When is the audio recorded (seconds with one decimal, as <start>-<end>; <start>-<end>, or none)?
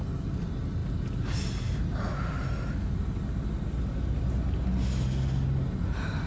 0.0-6.3